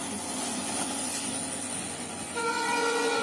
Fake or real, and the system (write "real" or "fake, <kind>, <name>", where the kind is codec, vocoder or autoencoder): fake, vocoder, Vocos